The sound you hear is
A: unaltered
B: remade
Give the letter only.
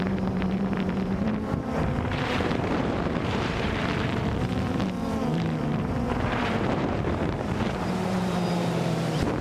B